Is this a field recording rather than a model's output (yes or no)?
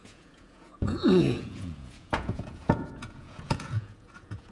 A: no